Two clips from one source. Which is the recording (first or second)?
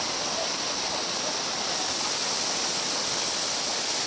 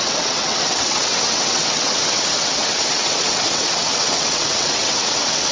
first